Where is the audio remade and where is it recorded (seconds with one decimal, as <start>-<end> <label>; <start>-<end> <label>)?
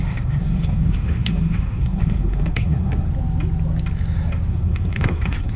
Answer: 0.0-3.1 remade; 3.1-4.5 recorded; 4.5-5.6 remade